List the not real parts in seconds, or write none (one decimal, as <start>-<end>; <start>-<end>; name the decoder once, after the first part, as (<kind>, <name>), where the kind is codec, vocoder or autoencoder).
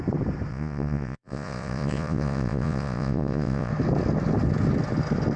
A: 0.5-3.7 (vocoder, Vocos)